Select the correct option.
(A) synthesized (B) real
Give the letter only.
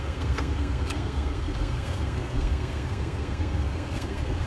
A